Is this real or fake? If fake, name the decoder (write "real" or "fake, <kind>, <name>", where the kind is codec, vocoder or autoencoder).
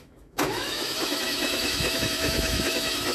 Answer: fake, autoencoder, DAC-VAE